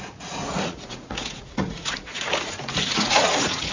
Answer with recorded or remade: remade